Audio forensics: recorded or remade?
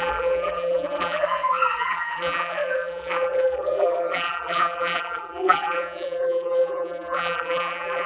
remade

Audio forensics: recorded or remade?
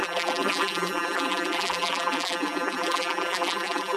remade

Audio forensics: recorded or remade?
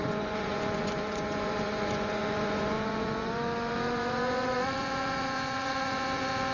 remade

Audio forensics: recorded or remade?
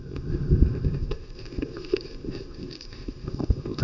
remade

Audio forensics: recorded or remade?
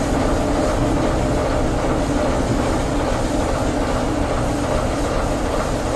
recorded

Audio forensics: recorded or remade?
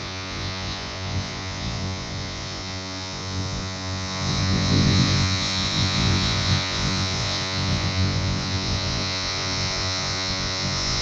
remade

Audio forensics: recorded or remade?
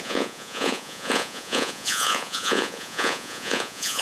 remade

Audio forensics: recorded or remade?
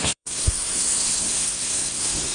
remade